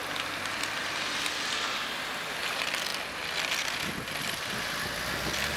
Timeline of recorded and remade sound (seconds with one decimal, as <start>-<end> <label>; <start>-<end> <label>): 0.0-5.6 recorded